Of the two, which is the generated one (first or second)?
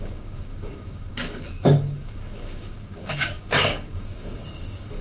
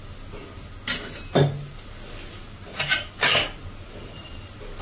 first